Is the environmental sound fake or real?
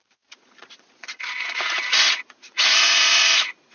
fake